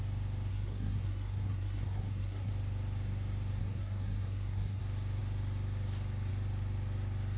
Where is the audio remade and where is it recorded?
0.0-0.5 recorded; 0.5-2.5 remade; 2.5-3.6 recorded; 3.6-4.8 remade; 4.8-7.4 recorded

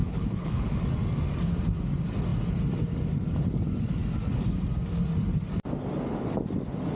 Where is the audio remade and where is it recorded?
0.0-0.8 remade; 0.8-7.0 recorded

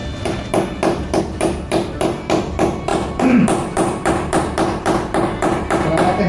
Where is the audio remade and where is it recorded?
0.0-1.2 recorded; 1.2-6.3 remade